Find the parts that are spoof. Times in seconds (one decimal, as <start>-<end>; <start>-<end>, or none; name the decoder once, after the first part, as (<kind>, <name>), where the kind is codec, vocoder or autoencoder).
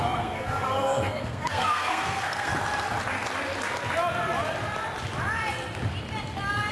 0.0-2.5 (codec, SNAC)